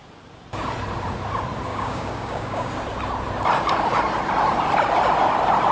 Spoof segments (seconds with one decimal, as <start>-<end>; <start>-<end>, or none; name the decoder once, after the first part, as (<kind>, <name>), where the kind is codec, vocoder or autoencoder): 1.7-2.7 (codec, DAC)